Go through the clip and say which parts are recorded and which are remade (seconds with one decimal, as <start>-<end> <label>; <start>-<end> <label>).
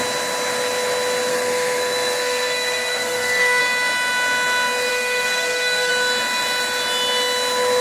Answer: 0.0-1.3 recorded; 1.3-3.6 remade; 3.6-4.9 recorded; 4.9-5.9 remade; 5.9-7.8 recorded